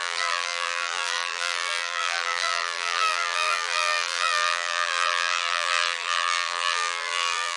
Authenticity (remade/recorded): remade